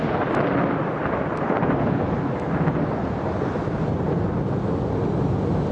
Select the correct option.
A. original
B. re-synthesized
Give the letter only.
A